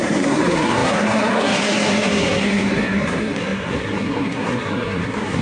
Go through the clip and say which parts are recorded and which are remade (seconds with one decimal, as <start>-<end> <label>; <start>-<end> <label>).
0.0-5.4 remade